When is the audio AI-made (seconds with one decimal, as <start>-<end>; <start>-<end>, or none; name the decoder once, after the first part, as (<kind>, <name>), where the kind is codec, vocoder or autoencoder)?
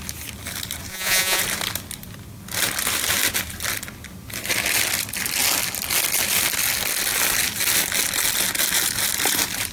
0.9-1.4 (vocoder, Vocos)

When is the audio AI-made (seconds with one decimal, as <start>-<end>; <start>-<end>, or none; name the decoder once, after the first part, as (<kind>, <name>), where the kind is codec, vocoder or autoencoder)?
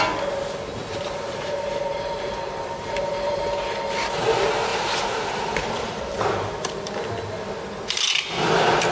0.8-3.4 (vocoder, BigVGAN v2); 4.7-6.5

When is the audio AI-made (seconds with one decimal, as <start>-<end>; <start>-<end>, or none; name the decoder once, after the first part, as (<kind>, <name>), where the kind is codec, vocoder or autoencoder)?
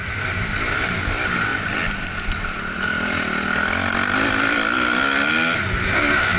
none